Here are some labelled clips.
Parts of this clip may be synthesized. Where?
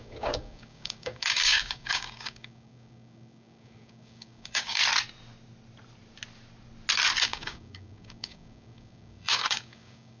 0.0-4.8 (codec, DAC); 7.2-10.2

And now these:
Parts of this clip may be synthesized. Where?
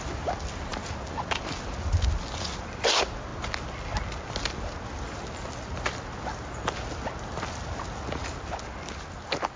none